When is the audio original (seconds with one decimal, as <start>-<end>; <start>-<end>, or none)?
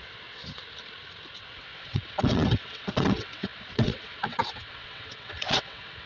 0.4-1.4